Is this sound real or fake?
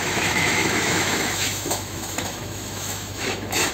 fake